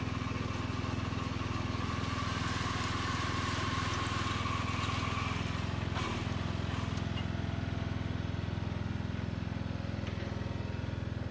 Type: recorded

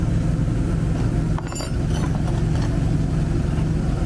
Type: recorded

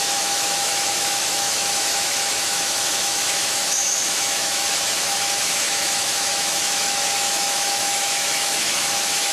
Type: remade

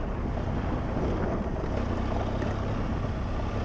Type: recorded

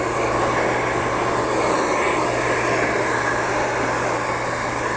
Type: recorded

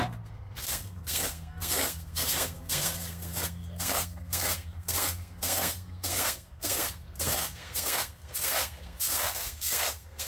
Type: remade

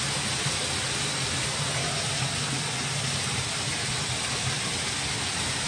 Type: recorded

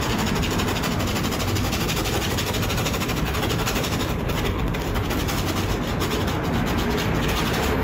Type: recorded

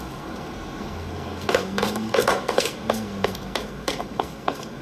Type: remade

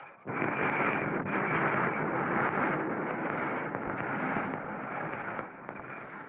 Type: recorded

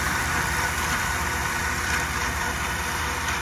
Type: remade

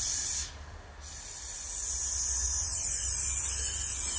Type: recorded